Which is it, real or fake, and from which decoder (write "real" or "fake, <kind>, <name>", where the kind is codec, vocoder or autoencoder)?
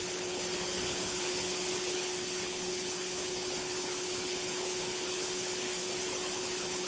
fake, codec, HILCodec